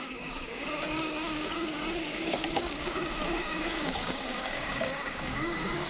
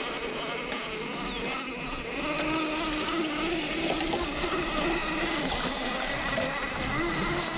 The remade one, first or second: first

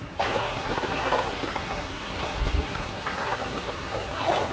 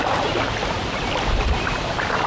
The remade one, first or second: first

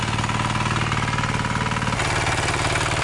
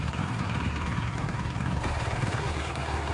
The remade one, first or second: second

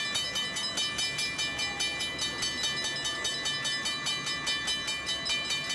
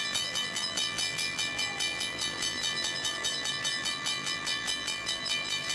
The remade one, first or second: second